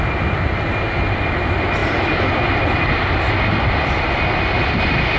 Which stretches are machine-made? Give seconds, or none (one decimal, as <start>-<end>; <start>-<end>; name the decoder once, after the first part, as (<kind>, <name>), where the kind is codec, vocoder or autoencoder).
none